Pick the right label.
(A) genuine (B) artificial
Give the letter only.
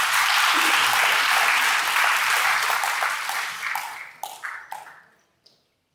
A